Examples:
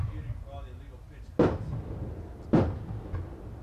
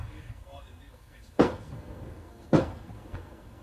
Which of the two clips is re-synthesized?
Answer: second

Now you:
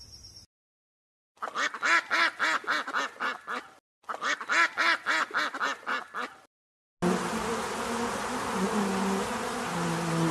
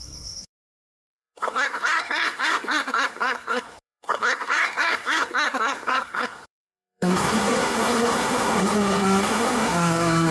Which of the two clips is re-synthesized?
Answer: second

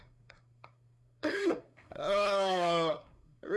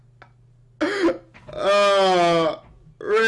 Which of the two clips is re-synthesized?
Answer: first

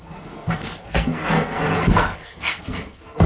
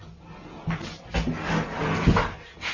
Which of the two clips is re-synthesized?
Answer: first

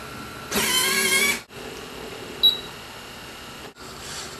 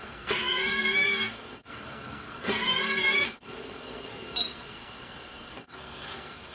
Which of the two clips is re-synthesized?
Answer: second